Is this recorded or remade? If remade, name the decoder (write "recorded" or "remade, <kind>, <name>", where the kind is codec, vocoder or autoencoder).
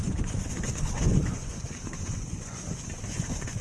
remade, vocoder, Vocos